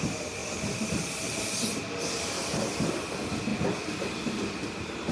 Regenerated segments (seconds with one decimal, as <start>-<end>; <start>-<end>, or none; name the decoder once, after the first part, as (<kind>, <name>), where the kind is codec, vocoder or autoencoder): 0.4-1.6 (vocoder, BigVGAN v2)

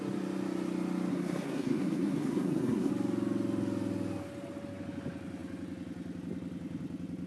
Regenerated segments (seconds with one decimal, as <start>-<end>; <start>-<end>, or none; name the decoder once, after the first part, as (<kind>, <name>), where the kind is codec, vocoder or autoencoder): 1.1-2.9 (codec, SNAC)

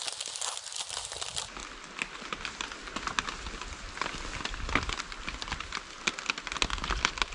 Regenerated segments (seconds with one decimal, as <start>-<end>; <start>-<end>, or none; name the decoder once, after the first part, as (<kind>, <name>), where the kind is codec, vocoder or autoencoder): 1.6-2.3 (vocoder, BigVGAN v2)

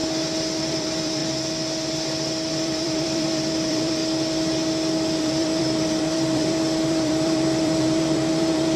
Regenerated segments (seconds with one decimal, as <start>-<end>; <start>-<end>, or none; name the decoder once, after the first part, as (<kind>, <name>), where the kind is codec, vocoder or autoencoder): 0.6-1.2 (vocoder, BigVGAN v2); 2.5-4.0; 5.2-8.8

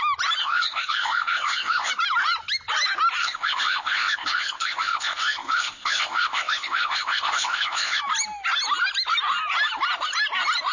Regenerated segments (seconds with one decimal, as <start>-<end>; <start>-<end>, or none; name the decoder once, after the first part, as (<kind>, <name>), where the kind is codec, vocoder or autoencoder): 0.4-1.9 (codec, ZipCodec); 3.2-8.0

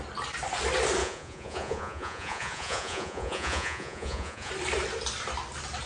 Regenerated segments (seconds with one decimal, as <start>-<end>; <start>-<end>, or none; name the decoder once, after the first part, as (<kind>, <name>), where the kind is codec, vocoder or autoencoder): 1.0-4.5 (vocoder, Vocos)